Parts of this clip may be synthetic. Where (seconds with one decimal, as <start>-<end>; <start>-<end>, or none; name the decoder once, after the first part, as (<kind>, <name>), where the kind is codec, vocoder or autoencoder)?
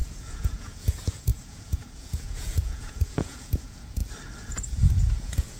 0.0-4.0 (vocoder, Vocos); 4.5-5.6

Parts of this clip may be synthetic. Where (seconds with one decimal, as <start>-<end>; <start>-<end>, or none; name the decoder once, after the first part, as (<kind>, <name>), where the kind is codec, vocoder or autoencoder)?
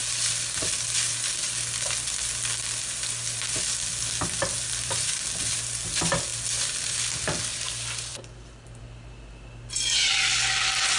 none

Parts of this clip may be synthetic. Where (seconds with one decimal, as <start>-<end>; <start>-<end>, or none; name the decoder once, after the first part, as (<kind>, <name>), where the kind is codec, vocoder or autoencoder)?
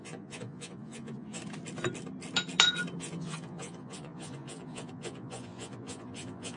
0.0-1.4 (vocoder, Vocos); 3.0-6.6